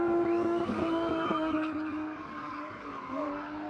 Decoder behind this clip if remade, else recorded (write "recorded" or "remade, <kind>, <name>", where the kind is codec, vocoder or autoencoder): remade, codec, DAC